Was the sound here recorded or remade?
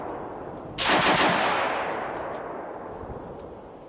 recorded